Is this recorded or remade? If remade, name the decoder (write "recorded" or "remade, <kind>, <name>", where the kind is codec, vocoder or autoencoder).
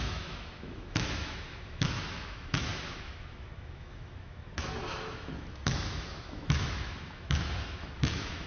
remade, autoencoder, DAC-VAE